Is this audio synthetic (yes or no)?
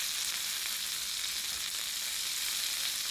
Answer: no